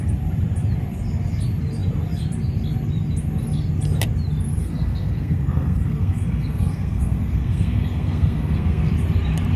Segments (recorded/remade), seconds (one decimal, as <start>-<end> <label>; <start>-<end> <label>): 0.0-4.6 recorded; 4.6-8.9 remade; 8.9-9.6 recorded